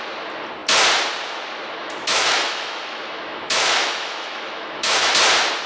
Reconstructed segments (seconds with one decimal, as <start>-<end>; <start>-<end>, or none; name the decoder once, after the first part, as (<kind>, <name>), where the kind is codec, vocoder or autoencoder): 1.8-5.1 (autoencoder, DAC-VAE)